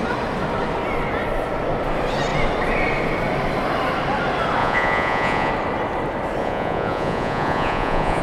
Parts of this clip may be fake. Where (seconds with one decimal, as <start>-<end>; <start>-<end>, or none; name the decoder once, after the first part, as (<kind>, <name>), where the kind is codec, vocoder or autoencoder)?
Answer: 4.6-5.5 (vocoder, Vocos); 6.4-8.2